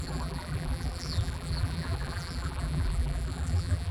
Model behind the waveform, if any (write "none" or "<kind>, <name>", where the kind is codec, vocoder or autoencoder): vocoder, BigVGAN v2